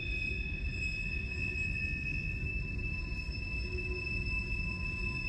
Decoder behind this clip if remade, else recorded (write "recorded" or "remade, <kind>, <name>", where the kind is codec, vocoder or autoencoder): recorded